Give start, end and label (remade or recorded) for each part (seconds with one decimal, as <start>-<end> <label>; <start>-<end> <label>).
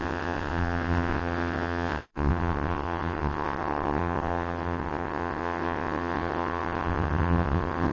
0.0-7.9 remade